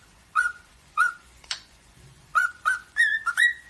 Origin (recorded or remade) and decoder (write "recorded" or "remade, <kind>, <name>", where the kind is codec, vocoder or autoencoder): remade, vocoder, Vocos